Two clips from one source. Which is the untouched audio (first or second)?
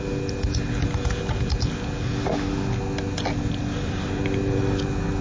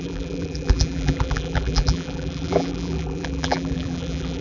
first